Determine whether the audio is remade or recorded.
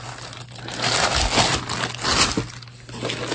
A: recorded